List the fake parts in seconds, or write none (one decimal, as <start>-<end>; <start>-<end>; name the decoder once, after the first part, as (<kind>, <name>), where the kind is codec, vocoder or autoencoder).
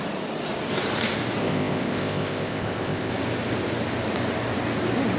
1.4-3.1 (codec, ZipCodec)